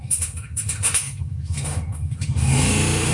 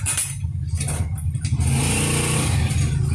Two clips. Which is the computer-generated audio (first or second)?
first